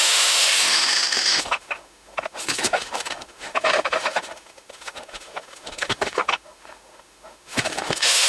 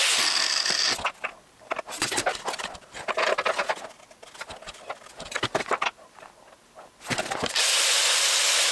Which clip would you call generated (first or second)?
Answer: first